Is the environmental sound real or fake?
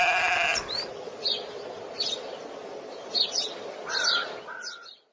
real